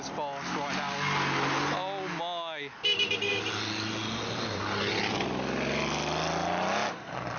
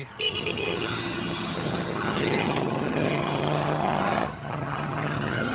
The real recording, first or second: first